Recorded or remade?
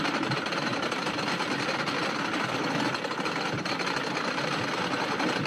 recorded